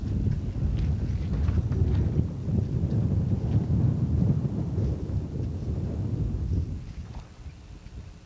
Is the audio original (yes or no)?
yes